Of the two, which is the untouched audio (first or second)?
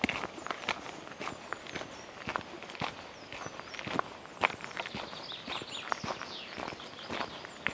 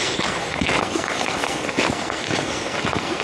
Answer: first